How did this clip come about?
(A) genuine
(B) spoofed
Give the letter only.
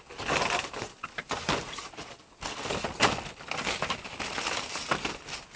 A